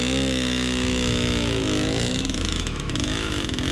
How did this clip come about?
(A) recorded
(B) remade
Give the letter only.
B